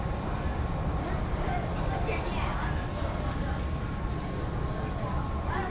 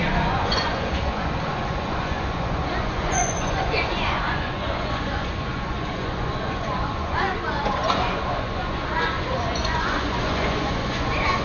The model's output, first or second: second